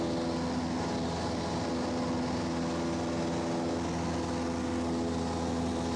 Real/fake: real